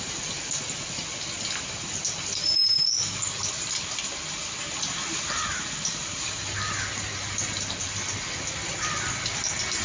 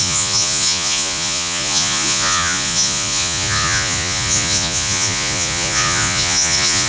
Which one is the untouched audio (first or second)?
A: first